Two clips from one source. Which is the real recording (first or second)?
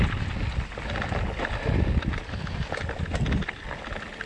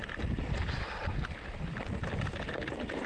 first